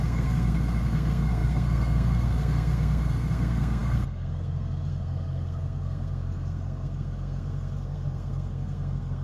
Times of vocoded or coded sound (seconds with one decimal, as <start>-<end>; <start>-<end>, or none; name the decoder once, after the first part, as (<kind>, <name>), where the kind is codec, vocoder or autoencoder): 0.0-9.2 (codec, SNAC)